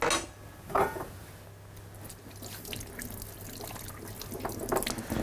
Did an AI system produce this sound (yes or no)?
no